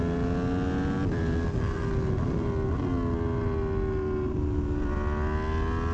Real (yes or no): yes